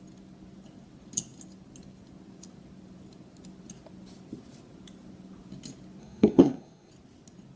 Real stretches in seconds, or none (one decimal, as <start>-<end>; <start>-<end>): 0.0-6.0; 6.9-7.6